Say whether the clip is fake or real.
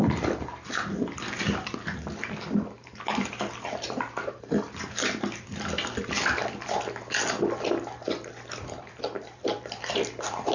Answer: fake